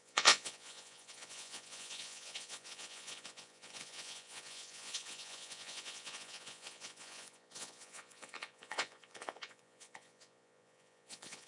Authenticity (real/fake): fake